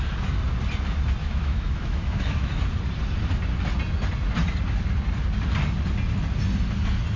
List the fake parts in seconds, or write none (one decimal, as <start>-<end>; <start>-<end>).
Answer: 1.2-2.6